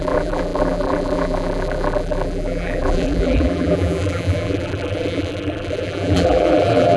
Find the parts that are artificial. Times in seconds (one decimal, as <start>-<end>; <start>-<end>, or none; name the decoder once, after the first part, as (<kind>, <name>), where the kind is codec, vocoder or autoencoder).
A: 0.0-7.0 (vocoder, BigVGAN v2)